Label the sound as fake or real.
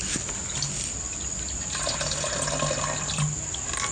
real